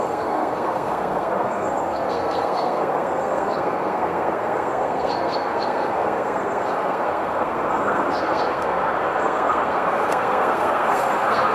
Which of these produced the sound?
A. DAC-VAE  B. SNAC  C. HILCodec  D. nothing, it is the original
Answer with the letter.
B